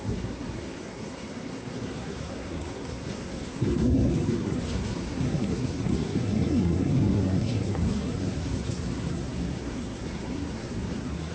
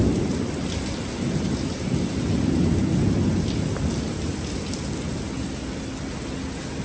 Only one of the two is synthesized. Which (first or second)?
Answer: first